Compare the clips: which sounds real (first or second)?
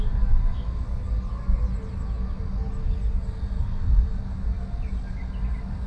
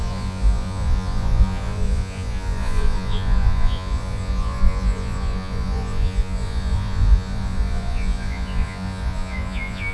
first